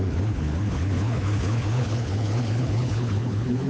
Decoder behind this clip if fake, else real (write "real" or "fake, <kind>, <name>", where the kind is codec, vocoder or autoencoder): fake, codec, HILCodec